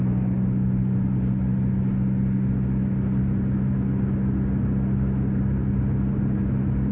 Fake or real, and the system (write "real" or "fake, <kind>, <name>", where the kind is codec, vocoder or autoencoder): real